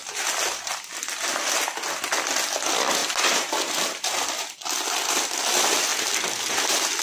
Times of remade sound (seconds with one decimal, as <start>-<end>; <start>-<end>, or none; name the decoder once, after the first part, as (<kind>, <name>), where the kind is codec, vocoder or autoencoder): none

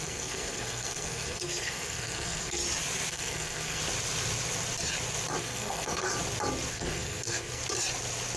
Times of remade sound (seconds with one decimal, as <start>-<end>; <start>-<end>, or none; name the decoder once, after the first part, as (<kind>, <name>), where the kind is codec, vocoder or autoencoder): 0.0-2.6 (codec, SNAC); 3.1-3.8; 5.4-6.1; 6.7-7.6

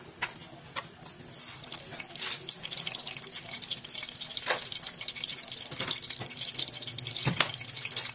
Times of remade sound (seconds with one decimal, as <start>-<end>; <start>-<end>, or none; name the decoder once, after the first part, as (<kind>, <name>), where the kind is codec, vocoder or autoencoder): none

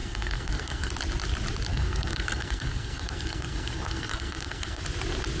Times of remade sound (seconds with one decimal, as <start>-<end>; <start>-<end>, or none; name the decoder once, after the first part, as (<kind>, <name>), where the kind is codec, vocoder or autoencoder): 0.0-0.9 (codec, SNAC); 1.7-4.8

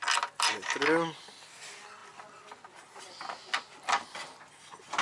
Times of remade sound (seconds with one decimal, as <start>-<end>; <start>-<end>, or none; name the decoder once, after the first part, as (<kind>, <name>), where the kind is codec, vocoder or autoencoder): none

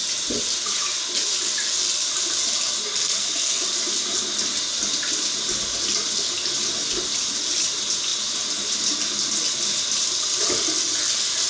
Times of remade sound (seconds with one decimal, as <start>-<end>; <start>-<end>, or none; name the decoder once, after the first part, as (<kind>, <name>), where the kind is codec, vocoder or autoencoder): 3.0-3.6 (codec, SNAC)

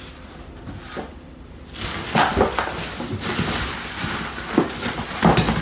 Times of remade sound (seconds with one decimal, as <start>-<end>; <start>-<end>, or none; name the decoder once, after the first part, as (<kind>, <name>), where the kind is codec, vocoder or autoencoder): none